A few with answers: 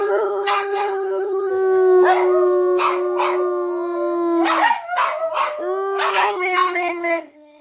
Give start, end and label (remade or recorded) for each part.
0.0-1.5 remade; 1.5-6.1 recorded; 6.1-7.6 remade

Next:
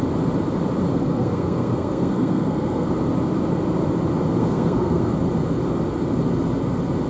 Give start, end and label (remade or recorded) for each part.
0.0-0.9 recorded; 0.9-2.9 remade; 2.9-4.4 recorded; 4.4-5.1 remade; 5.1-7.1 recorded

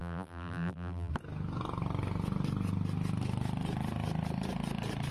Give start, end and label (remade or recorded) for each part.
0.0-1.1 remade; 1.1-5.1 recorded

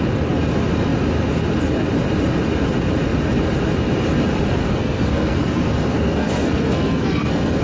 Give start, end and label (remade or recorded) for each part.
0.0-4.6 recorded; 4.6-7.6 remade

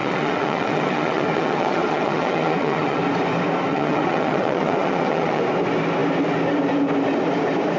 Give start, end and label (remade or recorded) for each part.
0.0-3.0 remade; 3.0-3.7 recorded; 3.7-5.4 remade; 5.4-7.8 recorded

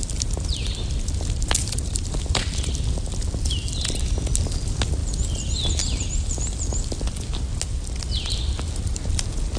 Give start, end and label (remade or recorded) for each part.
0.0-9.6 recorded